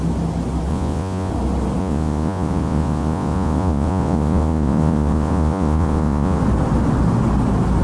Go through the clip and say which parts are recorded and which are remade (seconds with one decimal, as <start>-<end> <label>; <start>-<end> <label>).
0.0-0.7 recorded; 0.7-1.3 remade; 1.3-1.8 recorded; 1.8-6.4 remade; 6.4-7.8 recorded

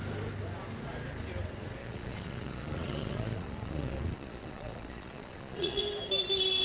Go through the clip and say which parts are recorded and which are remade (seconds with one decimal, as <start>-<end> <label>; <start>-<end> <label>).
0.0-1.8 recorded; 1.8-5.8 remade; 5.8-6.6 recorded

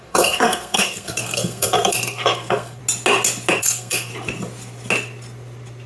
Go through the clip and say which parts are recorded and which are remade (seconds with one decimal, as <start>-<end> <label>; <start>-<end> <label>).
0.0-2.8 remade; 2.8-3.6 recorded; 3.6-4.1 remade; 4.1-5.9 recorded

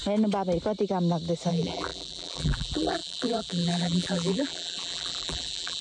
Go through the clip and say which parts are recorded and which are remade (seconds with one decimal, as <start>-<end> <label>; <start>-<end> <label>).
0.0-1.5 recorded; 1.5-5.8 remade

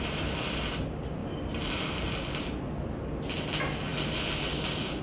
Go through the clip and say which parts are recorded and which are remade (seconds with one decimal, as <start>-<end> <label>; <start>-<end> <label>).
0.0-5.0 recorded

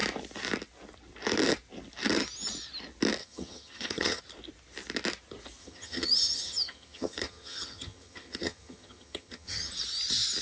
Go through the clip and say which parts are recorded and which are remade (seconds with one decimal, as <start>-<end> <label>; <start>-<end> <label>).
0.0-3.2 recorded; 3.2-4.2 remade; 4.2-5.6 recorded; 5.6-9.7 remade; 9.7-10.4 recorded

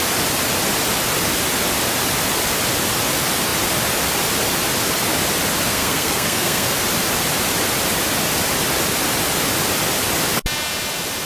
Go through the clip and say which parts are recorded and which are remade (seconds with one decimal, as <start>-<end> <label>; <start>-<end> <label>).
0.0-5.7 recorded; 5.7-6.7 remade; 6.7-11.2 recorded